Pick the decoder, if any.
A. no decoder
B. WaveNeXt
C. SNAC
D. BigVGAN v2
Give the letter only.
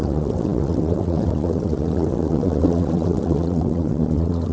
B